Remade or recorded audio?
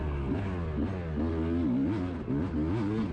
recorded